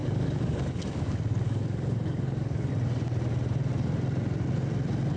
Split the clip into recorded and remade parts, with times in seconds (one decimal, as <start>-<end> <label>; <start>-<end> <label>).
0.0-2.7 remade; 2.7-5.2 recorded